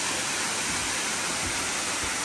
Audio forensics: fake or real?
real